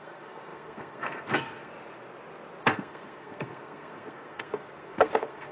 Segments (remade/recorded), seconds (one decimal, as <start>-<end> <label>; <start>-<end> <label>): 0.0-1.7 remade; 1.7-2.6 recorded; 2.6-5.5 remade